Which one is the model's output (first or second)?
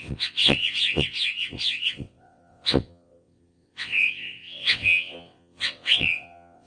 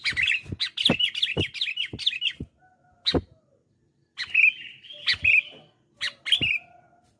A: first